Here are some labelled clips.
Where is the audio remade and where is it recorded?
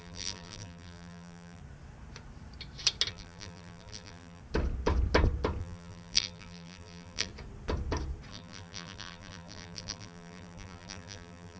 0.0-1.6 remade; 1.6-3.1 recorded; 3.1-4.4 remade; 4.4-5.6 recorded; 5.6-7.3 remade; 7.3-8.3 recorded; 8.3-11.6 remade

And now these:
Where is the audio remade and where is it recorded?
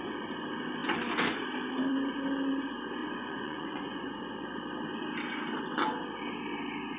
0.0-3.0 recorded; 3.0-4.2 remade; 4.2-7.0 recorded